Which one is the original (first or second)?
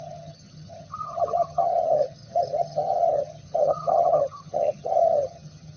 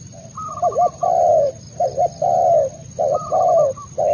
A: second